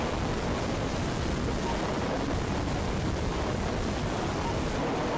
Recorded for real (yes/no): yes